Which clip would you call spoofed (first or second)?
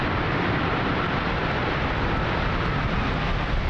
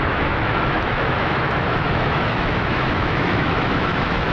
second